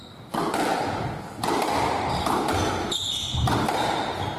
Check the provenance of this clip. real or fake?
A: real